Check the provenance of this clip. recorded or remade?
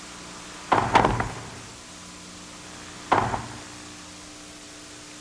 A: recorded